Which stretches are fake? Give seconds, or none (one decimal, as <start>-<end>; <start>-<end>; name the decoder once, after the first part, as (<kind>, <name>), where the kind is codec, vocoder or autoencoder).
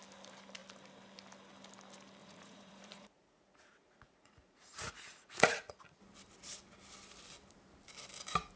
2.2-5.8 (vocoder, Vocos)